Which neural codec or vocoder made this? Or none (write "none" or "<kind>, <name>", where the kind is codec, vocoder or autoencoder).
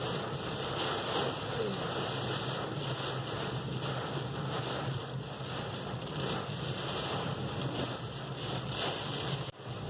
none